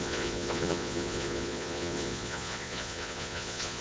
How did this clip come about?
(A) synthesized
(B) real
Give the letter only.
A